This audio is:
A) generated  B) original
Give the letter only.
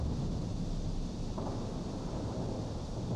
B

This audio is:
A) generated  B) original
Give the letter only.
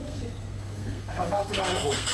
A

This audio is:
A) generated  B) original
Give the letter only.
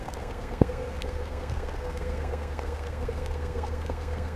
A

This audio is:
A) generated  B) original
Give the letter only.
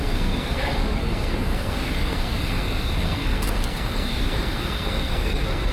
A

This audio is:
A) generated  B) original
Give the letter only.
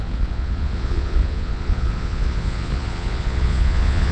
A